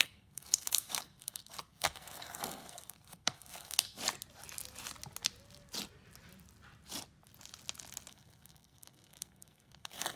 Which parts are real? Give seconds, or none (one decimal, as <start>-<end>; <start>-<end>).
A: 4.0-8.1